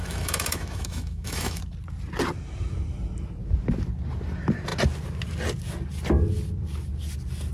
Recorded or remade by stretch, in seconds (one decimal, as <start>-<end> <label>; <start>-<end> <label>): 0.0-1.6 remade; 1.6-7.5 recorded